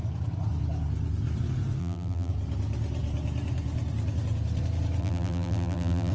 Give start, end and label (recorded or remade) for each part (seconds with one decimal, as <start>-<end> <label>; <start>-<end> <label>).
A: 0.0-1.8 recorded; 1.8-2.3 remade; 2.3-5.0 recorded; 5.0-6.1 remade